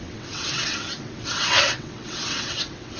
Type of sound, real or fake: fake